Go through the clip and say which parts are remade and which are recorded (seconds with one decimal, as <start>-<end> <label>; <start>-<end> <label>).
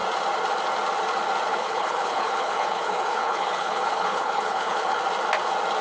0.0-1.5 recorded; 1.5-5.0 remade; 5.0-5.8 recorded